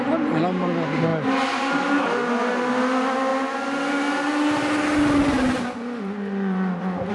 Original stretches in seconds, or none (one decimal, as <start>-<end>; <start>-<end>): 0.0-7.1